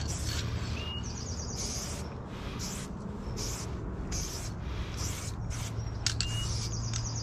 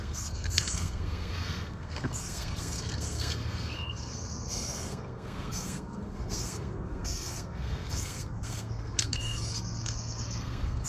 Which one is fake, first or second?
second